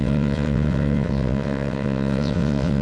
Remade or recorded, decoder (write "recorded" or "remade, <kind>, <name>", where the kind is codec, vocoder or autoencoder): remade, vocoder, WaveNeXt